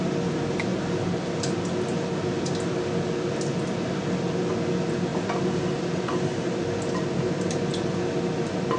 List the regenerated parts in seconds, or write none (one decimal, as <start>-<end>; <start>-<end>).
5.1-7.7